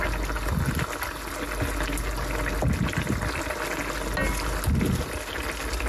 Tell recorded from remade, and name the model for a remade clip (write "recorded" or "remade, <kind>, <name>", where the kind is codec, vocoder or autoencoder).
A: recorded